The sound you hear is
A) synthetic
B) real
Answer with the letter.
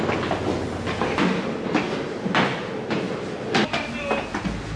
B